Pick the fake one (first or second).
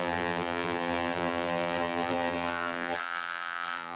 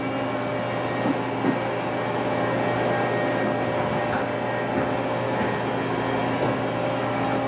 first